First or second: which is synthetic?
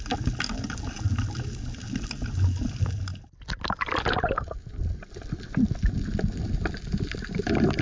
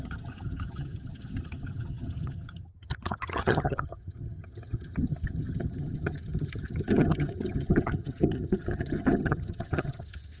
second